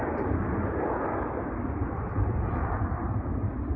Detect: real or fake real